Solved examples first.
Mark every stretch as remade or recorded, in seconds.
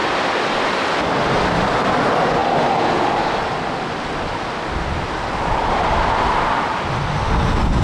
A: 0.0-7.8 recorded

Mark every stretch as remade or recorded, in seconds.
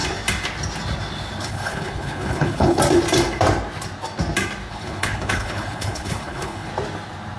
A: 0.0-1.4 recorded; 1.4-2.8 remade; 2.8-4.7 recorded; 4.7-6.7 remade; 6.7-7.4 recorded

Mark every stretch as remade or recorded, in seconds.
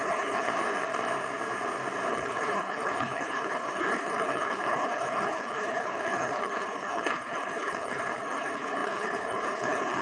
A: 0.0-0.5 remade; 0.5-2.1 recorded; 2.1-10.0 remade